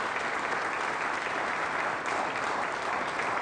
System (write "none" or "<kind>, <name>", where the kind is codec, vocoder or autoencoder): none